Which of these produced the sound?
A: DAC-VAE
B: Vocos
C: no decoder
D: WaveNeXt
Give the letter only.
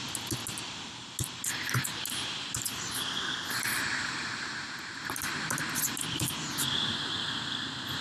C